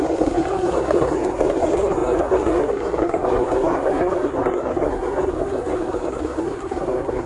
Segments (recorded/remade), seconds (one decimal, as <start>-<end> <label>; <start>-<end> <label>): 0.0-7.3 remade